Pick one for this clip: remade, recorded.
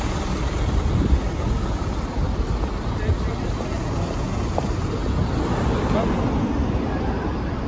recorded